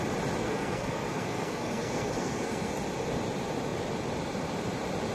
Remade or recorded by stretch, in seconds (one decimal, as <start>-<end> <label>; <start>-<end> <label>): 0.0-0.4 recorded; 0.4-2.7 remade; 2.7-5.1 recorded